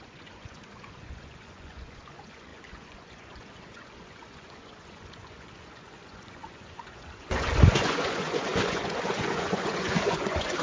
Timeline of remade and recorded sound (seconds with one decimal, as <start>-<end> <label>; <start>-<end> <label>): 0.0-10.6 remade